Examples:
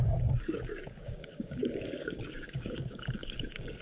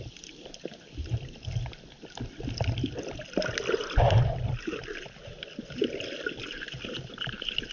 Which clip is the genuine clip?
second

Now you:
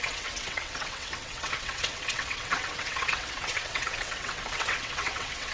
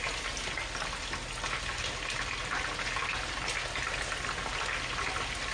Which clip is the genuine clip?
second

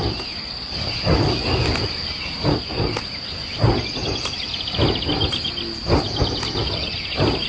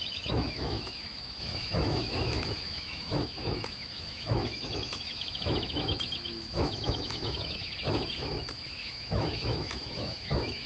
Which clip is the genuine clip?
first